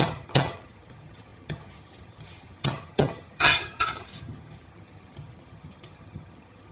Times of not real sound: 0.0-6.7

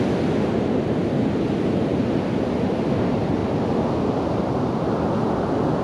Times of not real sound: none

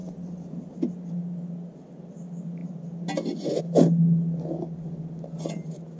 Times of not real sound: none

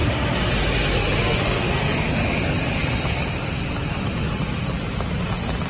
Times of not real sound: 1.2-1.8